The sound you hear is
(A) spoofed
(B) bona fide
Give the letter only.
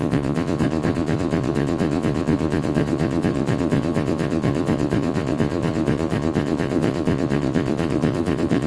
A